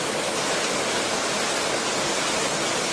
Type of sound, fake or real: real